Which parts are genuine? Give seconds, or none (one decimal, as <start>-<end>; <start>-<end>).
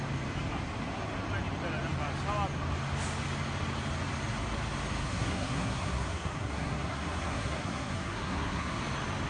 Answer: 0.0-5.0; 8.8-9.3